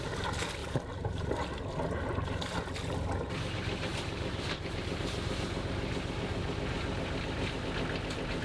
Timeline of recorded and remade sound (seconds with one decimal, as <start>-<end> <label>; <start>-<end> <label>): 0.0-0.6 recorded; 0.6-1.5 remade; 1.5-3.9 recorded; 3.9-5.3 remade; 5.3-8.4 recorded